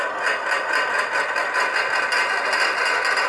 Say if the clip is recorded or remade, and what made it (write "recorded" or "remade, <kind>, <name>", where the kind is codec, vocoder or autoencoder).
recorded